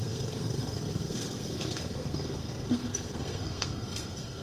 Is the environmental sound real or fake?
fake